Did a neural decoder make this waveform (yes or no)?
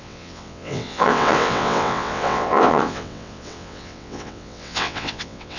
yes